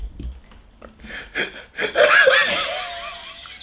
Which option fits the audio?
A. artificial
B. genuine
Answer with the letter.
B